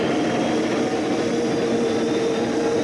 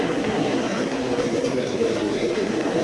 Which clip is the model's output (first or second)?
second